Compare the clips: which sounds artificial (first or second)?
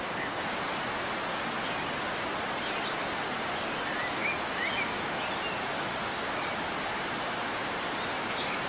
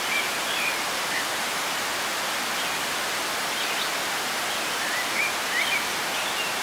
second